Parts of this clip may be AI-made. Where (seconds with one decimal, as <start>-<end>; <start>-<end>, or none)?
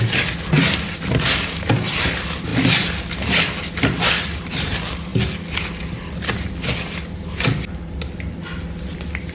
none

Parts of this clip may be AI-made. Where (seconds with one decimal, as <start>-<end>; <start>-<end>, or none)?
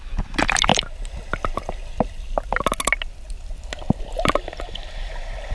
none